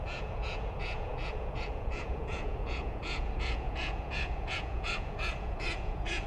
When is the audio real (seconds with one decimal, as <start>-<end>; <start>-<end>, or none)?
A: none

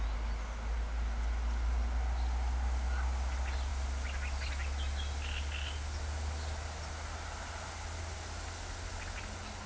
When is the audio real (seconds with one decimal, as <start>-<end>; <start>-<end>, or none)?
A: 0.0-9.7

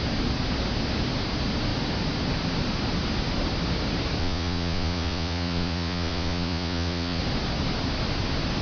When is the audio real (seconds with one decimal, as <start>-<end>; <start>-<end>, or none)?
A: 0.0-4.2; 7.2-8.6

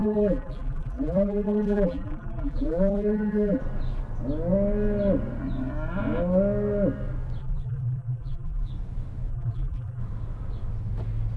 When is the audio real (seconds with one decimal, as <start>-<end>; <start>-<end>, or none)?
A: 3.6-7.4; 8.7-9.3; 10.0-11.4

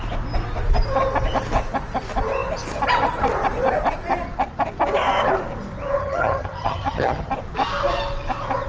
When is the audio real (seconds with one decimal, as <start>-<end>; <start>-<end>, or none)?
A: 0.0-6.0; 7.3-8.7